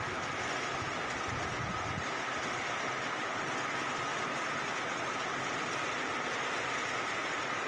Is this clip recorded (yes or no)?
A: yes